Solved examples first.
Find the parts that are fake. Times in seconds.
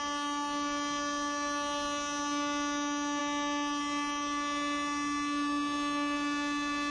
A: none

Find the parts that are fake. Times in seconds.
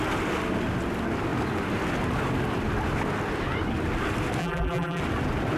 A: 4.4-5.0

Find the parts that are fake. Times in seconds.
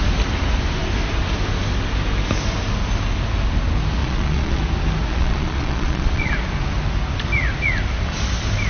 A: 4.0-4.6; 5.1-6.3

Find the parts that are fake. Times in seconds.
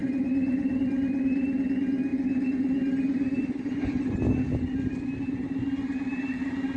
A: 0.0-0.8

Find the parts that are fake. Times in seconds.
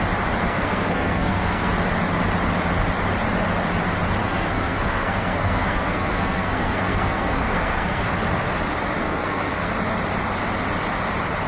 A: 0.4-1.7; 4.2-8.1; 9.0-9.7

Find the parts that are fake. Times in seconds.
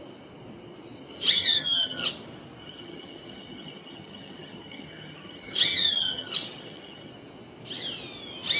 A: 1.1-2.1; 2.6-7.1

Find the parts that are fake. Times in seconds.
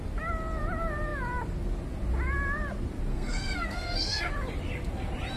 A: 3.1-4.3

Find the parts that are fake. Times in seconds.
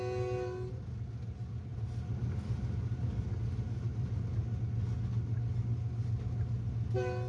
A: none